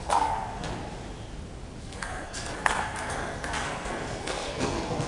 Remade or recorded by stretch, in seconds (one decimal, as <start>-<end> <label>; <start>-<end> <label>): 0.0-0.7 remade; 0.7-1.8 recorded; 1.8-5.1 remade